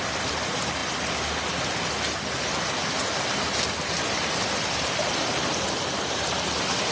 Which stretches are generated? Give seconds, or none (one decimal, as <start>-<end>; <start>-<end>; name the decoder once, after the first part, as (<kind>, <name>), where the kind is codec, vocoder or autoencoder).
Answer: none